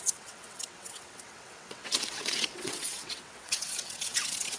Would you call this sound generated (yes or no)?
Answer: yes